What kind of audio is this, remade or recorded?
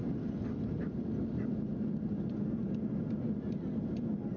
recorded